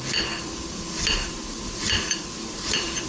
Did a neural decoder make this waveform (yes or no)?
yes